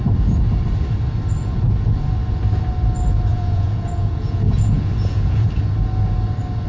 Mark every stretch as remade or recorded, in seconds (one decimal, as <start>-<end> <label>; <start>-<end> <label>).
0.0-3.3 recorded; 3.3-5.5 remade; 5.5-6.7 recorded